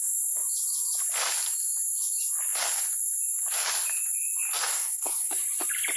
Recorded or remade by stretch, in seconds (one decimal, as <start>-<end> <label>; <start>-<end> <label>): 0.0-4.7 recorded; 4.7-5.3 remade; 5.3-6.0 recorded